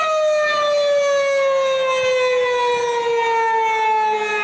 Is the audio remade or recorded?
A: recorded